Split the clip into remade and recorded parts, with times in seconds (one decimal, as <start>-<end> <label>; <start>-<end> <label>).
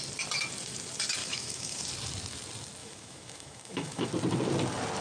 0.0-1.2 recorded; 1.2-1.8 remade; 1.8-2.8 recorded; 2.8-4.1 remade; 4.1-5.0 recorded